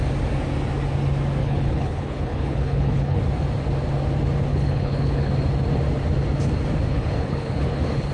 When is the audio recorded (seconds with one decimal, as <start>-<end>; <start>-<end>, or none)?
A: 0.0-1.4; 3.2-4.5; 5.3-6.9